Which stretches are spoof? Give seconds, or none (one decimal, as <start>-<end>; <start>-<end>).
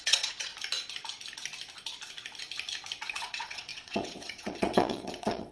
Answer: 0.0-0.5; 3.1-5.5